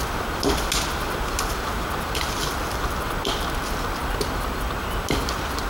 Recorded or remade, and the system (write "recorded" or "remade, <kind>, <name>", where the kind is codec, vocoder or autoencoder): recorded